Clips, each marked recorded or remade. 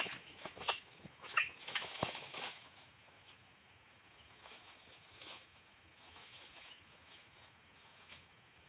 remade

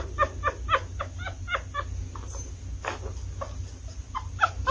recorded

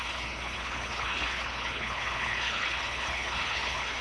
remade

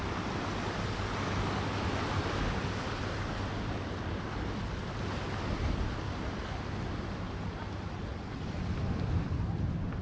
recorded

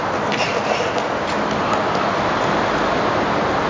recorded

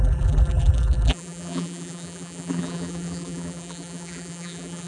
remade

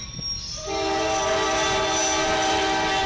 recorded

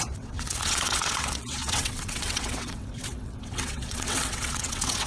remade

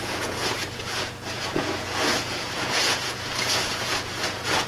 remade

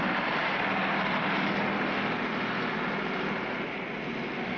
recorded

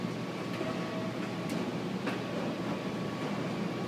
recorded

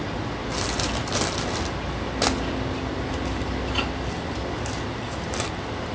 recorded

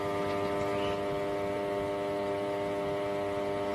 recorded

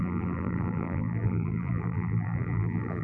remade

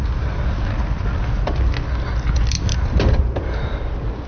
recorded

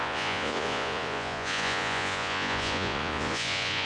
remade